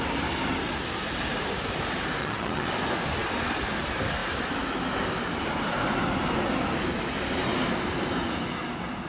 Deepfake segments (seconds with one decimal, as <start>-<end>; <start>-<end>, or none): 2.2-2.7